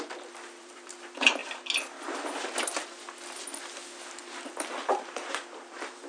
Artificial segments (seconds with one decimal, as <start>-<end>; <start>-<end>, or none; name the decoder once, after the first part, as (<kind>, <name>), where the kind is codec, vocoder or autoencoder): 0.0-1.4 (vocoder, BigVGAN v2); 4.7-6.1